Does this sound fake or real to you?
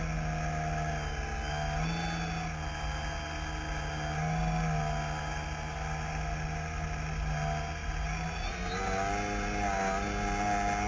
real